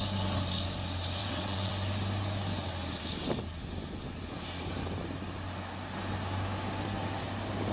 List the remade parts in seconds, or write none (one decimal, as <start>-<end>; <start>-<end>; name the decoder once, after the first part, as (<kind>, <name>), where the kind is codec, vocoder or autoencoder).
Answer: 1.2-1.7 (vocoder, WaveNeXt)